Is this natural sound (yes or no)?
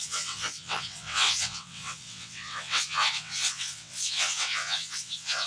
no